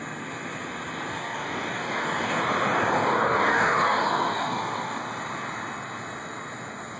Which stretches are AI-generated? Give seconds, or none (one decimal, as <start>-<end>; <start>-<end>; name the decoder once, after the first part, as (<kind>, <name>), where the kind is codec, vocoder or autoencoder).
1.1-2.4 (codec, DAC); 3.1-5.0